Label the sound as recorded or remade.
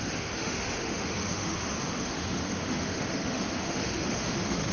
remade